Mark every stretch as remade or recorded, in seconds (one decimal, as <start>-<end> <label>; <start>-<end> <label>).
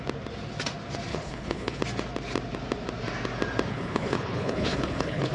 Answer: 0.0-1.1 recorded; 1.1-1.8 remade; 1.8-3.7 recorded; 3.7-5.3 remade